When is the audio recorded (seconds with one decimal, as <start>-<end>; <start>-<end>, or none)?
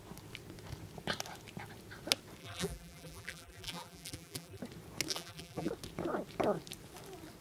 0.0-2.4; 4.6-5.1; 5.7-7.4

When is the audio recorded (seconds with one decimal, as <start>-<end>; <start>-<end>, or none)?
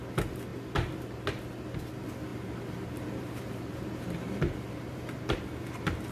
0.0-2.3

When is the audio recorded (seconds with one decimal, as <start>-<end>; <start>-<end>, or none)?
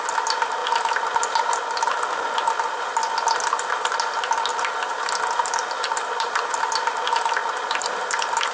0.0-4.5; 7.0-7.4; 7.9-8.5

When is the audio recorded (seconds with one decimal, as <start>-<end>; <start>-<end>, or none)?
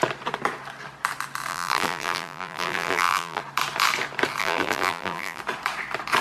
0.0-1.5; 3.4-4.4; 5.4-6.2